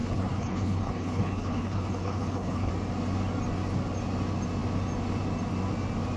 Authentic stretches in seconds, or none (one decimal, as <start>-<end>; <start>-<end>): 2.7-6.2